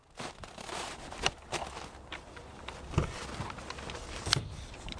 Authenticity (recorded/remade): recorded